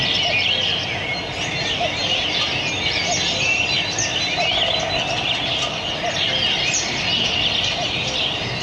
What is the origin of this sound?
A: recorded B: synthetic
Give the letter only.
A